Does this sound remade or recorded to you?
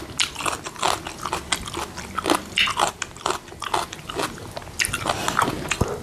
recorded